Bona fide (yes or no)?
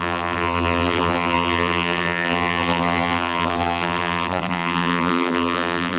no